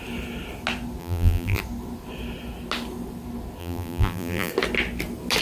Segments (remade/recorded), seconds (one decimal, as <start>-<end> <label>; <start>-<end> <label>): 0.0-1.0 recorded; 1.0-1.6 remade; 1.6-3.6 recorded; 3.6-4.5 remade; 4.5-5.4 recorded